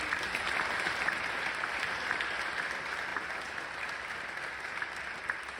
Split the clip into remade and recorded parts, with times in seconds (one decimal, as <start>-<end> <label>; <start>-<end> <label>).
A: 0.0-3.1 remade; 3.1-5.0 recorded; 5.0-5.6 remade